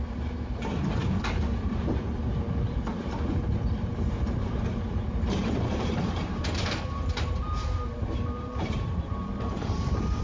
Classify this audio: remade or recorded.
remade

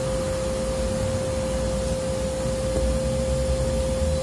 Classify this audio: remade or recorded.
recorded